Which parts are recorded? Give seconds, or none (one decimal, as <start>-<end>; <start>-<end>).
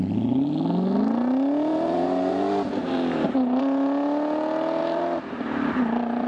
0.0-1.7; 3.6-4.8